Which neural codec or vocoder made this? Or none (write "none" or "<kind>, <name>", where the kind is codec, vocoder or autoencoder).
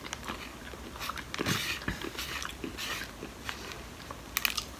none